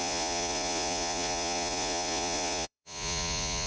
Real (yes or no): no